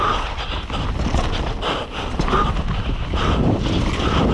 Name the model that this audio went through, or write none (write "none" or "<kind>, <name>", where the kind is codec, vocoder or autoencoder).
none